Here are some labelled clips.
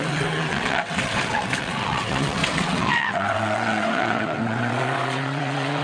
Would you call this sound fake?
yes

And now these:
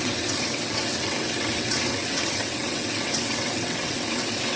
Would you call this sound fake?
yes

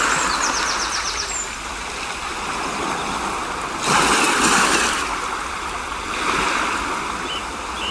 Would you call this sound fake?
no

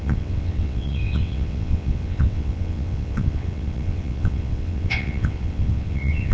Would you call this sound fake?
yes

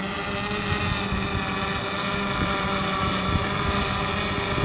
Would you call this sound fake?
no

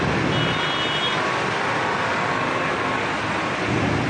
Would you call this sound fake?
no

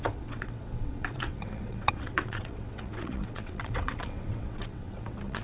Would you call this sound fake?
yes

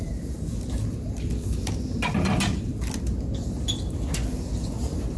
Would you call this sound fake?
no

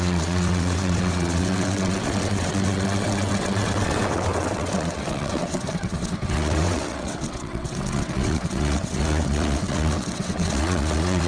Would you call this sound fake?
yes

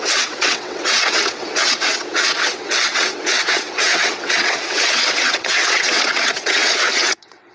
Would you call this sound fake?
yes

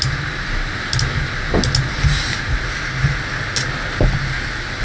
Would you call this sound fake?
no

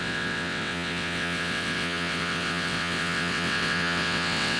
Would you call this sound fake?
yes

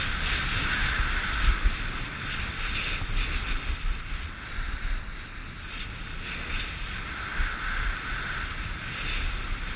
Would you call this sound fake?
no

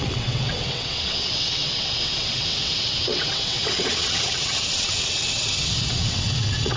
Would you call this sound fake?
yes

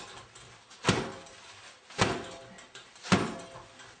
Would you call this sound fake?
no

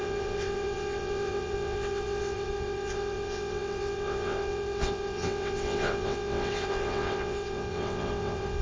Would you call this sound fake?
yes